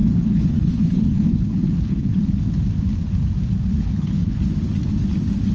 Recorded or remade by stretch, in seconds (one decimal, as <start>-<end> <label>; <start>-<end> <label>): 0.0-2.2 remade; 2.2-3.7 recorded; 3.7-4.4 remade; 4.4-5.5 recorded